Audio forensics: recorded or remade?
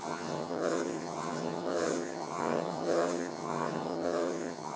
remade